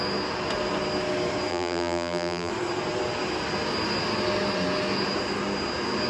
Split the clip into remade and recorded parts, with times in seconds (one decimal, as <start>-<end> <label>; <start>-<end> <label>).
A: 0.0-1.5 recorded; 1.5-2.5 remade; 2.5-6.1 recorded